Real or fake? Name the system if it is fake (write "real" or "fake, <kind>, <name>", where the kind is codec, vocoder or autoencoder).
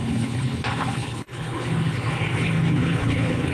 fake, codec, HILCodec